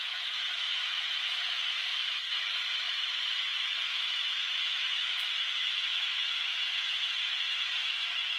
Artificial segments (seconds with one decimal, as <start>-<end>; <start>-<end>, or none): 0.0-8.4